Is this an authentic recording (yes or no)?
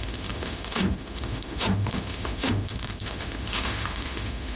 no